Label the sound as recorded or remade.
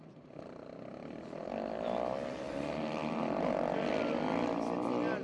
recorded